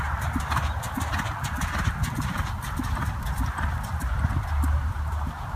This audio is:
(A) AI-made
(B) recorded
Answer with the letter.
A